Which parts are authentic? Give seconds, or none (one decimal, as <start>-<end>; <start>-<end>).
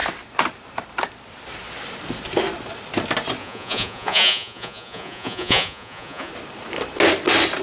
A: 0.0-3.4; 6.3-7.6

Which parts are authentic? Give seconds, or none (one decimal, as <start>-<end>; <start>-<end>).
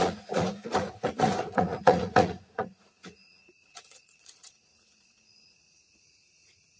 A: none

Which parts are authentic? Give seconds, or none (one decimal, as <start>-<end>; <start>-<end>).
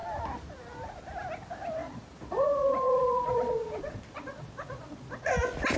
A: 0.0-1.8; 5.3-5.8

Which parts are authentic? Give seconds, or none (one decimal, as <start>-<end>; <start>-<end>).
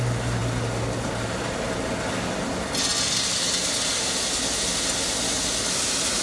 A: 0.0-6.2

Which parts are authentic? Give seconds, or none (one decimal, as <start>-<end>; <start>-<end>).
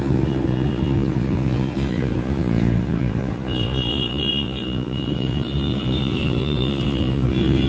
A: none